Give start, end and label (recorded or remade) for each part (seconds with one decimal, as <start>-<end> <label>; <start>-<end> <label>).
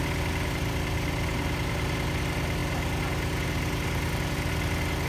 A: 0.0-5.1 recorded